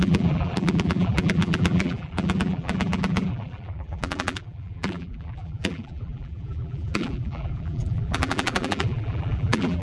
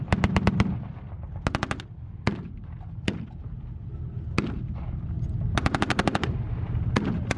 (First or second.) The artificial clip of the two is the first